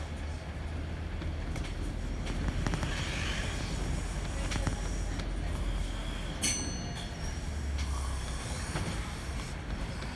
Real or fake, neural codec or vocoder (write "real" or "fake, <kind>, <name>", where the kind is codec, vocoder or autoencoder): real